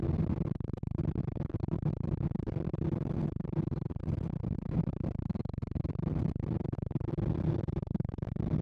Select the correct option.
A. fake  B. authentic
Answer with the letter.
B